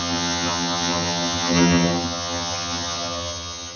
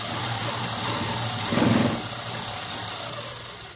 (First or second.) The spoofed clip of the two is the first